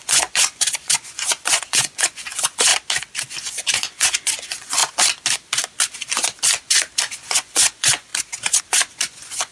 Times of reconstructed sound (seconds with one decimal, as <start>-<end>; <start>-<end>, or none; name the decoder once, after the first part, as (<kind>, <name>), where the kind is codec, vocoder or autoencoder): 0.0-2.7 (vocoder, Vocos); 3.3-4.8; 7.0-8.1; 8.6-9.5